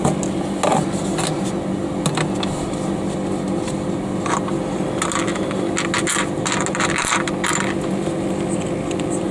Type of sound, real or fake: real